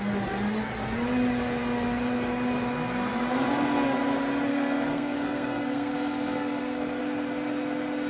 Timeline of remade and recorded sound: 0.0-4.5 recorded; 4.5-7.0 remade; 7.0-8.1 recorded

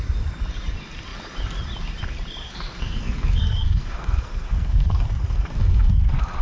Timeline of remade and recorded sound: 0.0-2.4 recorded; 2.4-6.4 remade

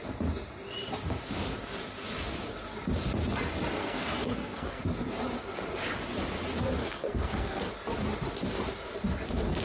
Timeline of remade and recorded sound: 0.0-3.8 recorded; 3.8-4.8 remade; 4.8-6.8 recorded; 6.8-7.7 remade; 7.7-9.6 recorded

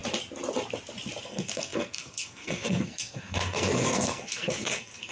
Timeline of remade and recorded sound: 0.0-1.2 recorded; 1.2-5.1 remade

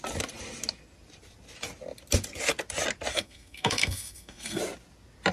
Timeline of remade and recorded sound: 0.0-3.1 recorded; 3.1-4.6 remade; 4.6-5.3 recorded

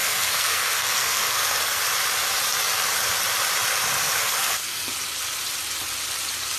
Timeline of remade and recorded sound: 0.0-1.8 remade; 1.8-4.2 recorded; 4.2-4.9 remade; 4.9-6.6 recorded

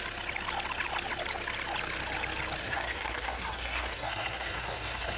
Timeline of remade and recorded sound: 0.0-2.6 recorded; 2.6-5.2 remade

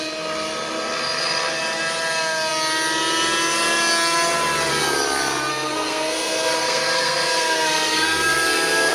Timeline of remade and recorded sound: 0.0-5.5 recorded; 5.5-8.9 remade